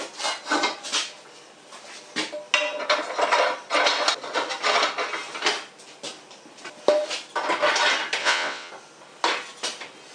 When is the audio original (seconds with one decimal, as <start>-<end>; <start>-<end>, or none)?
0.0-8.2; 8.7-10.1